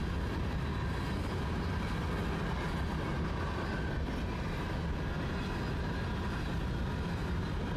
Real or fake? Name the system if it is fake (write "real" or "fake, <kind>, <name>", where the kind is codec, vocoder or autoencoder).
real